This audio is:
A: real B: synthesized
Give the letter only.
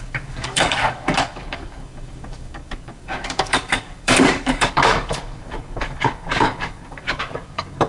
B